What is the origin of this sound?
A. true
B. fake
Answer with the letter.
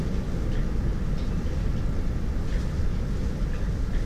A